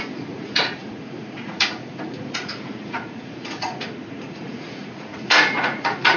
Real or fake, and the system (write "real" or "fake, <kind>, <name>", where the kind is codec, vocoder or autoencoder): fake, vocoder, Vocos